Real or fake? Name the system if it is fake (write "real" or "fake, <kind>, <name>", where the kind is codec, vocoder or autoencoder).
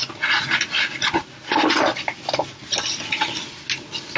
real